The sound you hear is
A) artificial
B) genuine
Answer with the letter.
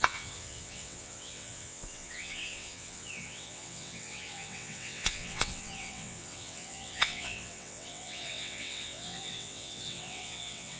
A